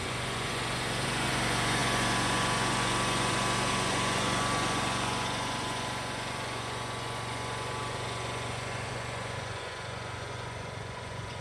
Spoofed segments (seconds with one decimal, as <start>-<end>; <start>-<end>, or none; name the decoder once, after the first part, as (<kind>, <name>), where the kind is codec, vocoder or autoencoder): 0.0-11.4 (vocoder, Vocos)